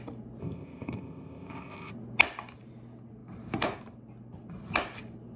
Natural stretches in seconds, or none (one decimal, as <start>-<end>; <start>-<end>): 0.0-0.4; 1.9-5.4